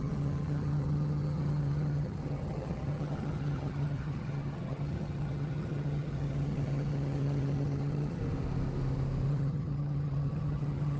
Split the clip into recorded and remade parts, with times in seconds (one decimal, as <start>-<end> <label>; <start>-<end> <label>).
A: 0.0-8.2 remade; 8.2-9.3 recorded; 9.3-11.0 remade

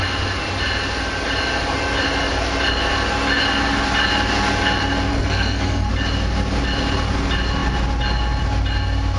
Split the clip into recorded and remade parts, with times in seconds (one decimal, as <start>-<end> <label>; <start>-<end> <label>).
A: 0.0-5.1 recorded; 5.1-5.9 remade; 5.9-9.2 recorded

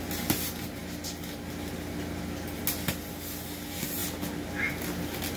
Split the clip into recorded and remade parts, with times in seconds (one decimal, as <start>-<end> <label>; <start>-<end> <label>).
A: 0.0-5.4 recorded

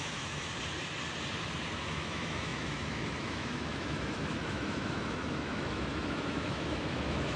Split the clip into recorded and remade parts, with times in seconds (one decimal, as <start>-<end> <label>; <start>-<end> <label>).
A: 0.0-0.5 remade; 0.5-1.8 recorded; 1.8-7.4 remade

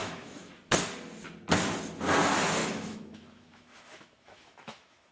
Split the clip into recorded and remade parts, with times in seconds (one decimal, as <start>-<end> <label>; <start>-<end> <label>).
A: 0.0-0.5 remade; 0.5-2.6 recorded; 2.6-5.1 remade